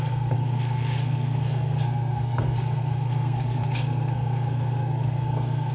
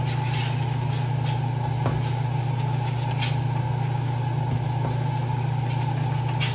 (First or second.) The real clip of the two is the second